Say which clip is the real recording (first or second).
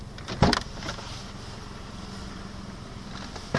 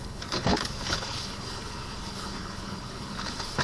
first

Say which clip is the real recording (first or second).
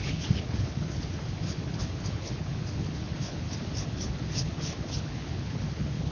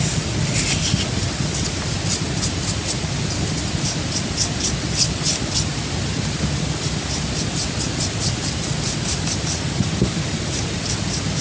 second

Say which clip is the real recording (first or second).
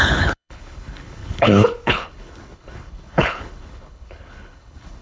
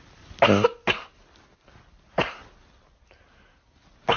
second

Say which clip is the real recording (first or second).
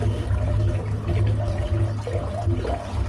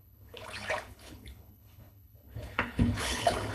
first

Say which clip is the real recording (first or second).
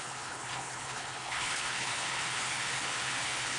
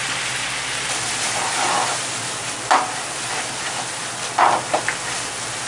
second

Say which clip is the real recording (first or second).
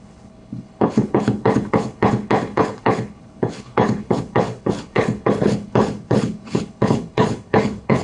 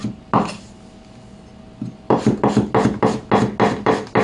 second